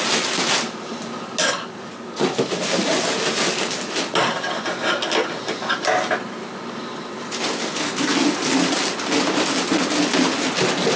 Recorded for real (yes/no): yes